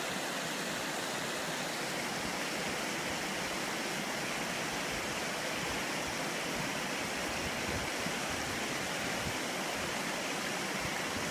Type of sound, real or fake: real